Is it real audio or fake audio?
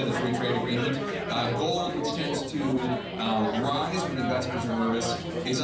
real